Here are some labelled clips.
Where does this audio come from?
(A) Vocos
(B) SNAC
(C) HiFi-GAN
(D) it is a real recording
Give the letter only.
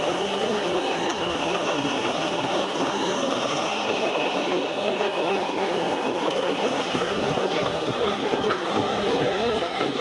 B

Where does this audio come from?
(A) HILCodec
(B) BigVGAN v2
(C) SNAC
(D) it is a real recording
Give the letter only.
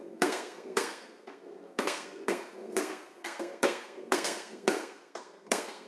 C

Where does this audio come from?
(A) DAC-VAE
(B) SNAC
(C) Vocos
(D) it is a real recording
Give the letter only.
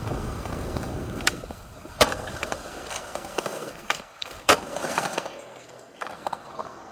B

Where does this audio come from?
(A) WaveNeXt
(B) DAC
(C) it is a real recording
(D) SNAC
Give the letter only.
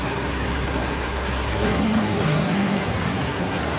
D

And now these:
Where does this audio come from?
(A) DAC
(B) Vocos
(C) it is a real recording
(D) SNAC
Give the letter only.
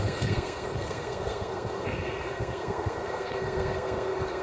D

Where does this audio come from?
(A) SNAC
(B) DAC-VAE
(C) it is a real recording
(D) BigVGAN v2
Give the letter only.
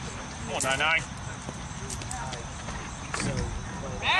C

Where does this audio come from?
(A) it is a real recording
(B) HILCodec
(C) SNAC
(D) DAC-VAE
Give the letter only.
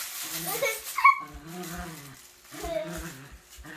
A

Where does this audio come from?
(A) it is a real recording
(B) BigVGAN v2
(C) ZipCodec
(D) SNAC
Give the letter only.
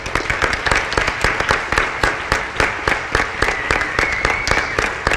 A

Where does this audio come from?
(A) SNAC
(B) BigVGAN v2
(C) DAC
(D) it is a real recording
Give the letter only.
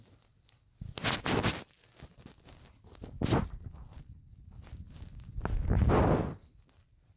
D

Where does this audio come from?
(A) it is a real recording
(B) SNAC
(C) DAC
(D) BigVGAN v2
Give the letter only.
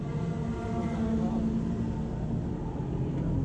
A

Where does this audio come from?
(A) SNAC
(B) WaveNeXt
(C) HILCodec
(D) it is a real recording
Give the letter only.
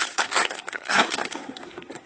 A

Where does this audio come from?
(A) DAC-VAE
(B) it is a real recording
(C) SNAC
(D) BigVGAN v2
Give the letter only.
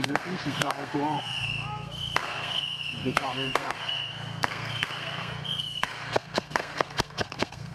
C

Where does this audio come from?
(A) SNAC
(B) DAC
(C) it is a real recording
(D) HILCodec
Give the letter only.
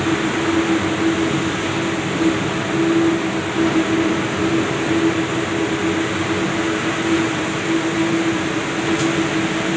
C